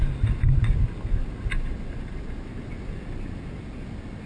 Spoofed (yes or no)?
no